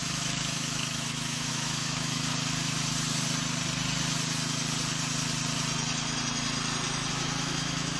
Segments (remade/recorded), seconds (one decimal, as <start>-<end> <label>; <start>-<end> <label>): 0.0-2.3 remade; 2.3-7.1 recorded; 7.1-8.0 remade